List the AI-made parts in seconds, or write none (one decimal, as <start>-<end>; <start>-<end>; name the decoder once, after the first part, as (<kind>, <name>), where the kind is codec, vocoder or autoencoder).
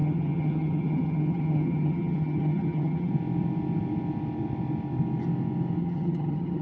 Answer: 0.0-3.1 (vocoder, HiFi-GAN); 5.8-6.6